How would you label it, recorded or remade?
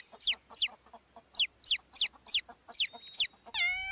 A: recorded